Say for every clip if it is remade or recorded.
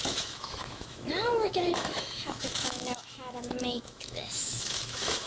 remade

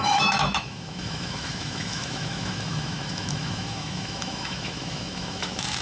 remade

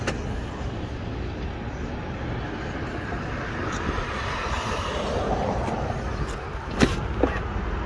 recorded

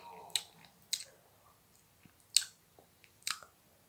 recorded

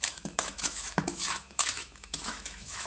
remade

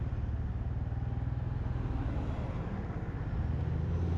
recorded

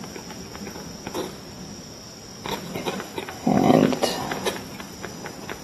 recorded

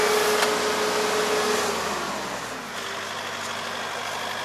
recorded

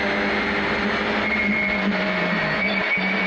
recorded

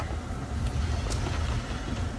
recorded